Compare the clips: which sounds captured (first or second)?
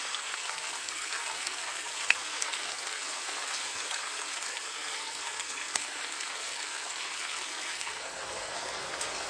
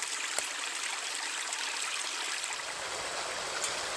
second